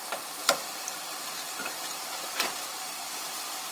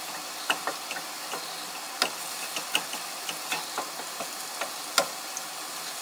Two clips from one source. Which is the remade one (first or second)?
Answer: first